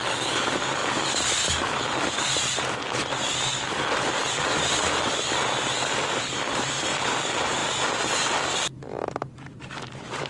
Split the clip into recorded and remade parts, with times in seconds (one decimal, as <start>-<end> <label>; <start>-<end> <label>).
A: 0.0-7.6 remade; 7.6-8.5 recorded; 8.5-10.3 remade